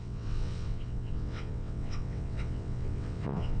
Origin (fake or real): fake